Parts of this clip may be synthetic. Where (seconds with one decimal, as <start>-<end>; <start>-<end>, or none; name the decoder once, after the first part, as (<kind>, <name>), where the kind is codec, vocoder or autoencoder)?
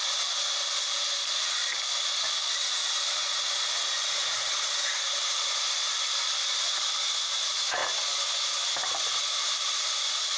0.0-3.2 (vocoder, BigVGAN v2); 6.8-7.8; 8.5-10.4